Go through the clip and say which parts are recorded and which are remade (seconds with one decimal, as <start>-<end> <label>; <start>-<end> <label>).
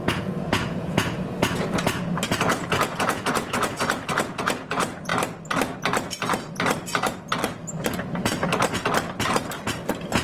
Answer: 0.0-2.0 remade; 2.0-2.5 recorded; 2.5-5.1 remade; 5.1-10.2 recorded